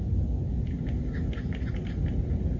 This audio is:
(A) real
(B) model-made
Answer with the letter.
A